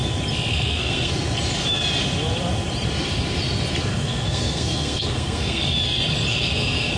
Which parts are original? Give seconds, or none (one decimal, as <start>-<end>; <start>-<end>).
0.0-0.5; 1.1-3.9; 5.6-6.3

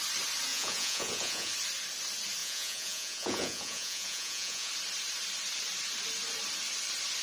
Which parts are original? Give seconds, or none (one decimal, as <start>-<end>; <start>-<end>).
0.0-0.5; 1.5-2.4; 4.7-7.2